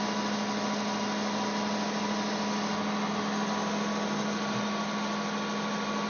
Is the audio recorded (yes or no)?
yes